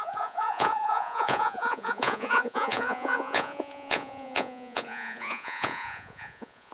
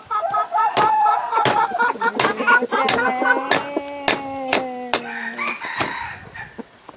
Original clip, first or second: second